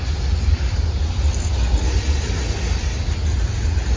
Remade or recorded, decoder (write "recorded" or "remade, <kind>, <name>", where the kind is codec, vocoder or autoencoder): recorded